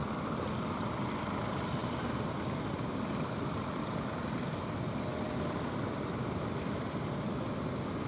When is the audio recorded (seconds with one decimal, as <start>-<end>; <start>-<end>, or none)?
0.0-8.1